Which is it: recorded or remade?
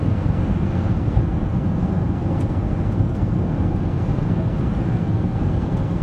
remade